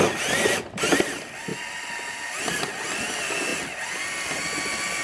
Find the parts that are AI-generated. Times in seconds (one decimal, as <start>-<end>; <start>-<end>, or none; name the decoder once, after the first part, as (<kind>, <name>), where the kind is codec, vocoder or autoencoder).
none